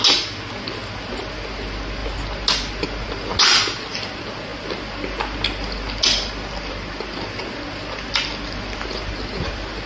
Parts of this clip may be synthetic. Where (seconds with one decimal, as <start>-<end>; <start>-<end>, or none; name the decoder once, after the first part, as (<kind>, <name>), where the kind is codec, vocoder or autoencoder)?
none